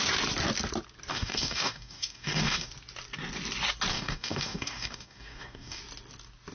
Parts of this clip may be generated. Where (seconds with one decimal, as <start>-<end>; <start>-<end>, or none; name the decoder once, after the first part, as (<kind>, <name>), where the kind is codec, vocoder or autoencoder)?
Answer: 1.1-2.7 (codec, DAC); 3.9-5.8